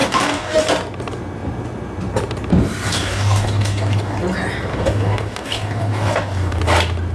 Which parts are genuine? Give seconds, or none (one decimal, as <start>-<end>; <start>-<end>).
0.6-2.9; 4.2-4.7; 6.6-7.1